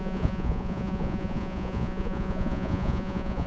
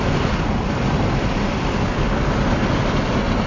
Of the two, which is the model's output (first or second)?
first